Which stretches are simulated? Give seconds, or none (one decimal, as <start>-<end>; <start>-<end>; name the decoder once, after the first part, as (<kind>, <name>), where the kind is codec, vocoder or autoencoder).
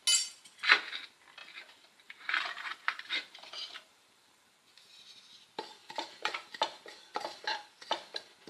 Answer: 1.4-5.0 (vocoder, BigVGAN v2); 5.8-6.6